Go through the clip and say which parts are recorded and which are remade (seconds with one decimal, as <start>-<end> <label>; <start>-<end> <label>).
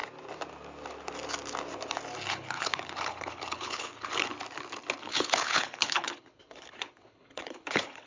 0.0-2.3 recorded; 2.3-4.3 remade; 4.3-5.0 recorded; 5.0-8.1 remade